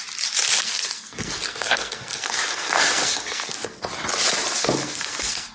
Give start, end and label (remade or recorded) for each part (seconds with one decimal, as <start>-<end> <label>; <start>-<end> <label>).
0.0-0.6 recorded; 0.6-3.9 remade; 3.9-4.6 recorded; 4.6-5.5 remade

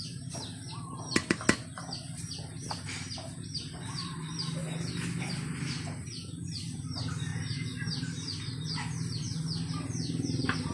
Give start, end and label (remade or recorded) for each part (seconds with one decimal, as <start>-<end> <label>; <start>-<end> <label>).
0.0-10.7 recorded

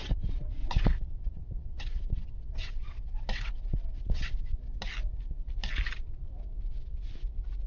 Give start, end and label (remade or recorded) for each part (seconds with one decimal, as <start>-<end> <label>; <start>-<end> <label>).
0.0-4.5 remade; 4.5-7.7 recorded

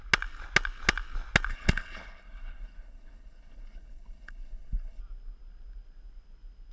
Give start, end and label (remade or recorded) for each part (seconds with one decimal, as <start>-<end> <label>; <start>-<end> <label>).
0.0-1.5 recorded; 1.5-5.0 remade; 5.0-6.7 recorded

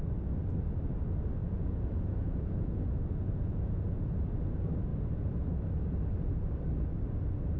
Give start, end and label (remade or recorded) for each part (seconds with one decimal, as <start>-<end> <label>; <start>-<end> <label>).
0.0-1.4 recorded; 1.4-4.2 remade; 4.2-7.6 recorded

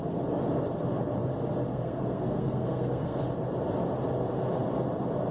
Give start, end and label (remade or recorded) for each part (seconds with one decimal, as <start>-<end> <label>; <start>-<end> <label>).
0.0-1.7 recorded; 1.7-3.2 remade; 3.2-5.3 recorded

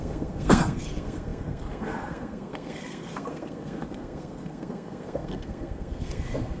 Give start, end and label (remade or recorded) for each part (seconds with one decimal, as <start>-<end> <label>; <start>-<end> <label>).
0.0-6.6 remade